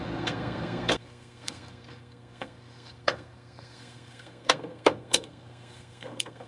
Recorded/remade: remade